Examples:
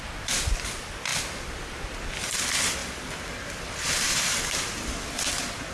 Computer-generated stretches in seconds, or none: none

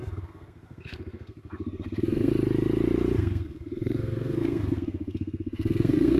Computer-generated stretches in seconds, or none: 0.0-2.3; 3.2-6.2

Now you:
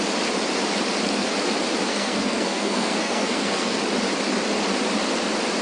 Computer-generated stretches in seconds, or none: 1.9-3.8

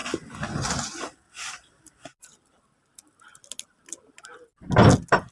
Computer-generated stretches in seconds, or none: none